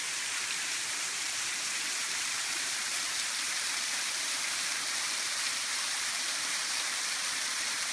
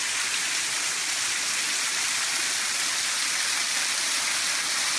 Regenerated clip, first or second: first